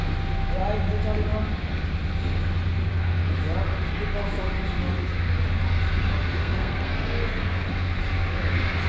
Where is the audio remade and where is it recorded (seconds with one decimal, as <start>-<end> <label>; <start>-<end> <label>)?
0.0-6.4 recorded; 6.4-7.7 remade; 7.7-8.9 recorded